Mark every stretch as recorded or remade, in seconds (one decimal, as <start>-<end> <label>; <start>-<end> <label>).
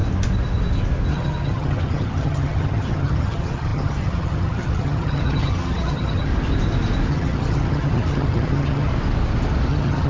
0.0-1.1 recorded; 1.1-6.3 remade; 6.3-7.1 recorded; 7.1-8.9 remade; 8.9-9.7 recorded; 9.7-10.1 remade